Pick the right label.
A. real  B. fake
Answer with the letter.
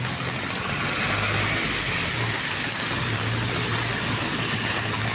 A